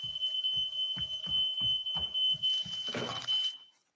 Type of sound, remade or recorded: recorded